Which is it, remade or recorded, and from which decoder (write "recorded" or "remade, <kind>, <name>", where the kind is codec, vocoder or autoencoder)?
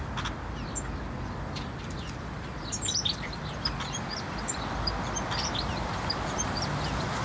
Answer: recorded